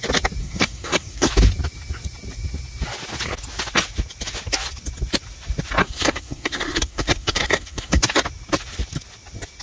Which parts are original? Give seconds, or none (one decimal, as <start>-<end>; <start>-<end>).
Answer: 0.0-0.4; 1.3-5.8; 8.0-9.6

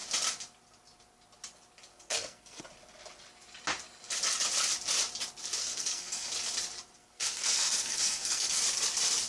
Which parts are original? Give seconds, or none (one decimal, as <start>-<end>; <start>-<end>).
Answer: 0.0-1.9; 2.6-5.6; 6.3-7.0; 8.6-9.3

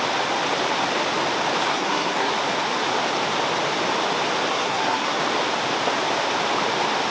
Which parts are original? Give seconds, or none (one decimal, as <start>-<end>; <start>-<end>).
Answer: 0.0-1.7; 2.3-4.5; 5.2-7.1

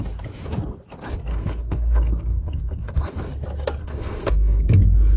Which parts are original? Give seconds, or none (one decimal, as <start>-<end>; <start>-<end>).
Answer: 0.0-1.3; 3.1-3.8; 4.6-5.2